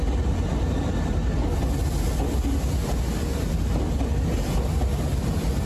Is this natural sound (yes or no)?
yes